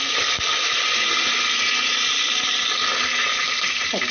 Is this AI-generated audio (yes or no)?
no